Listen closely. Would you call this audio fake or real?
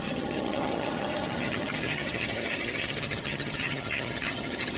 fake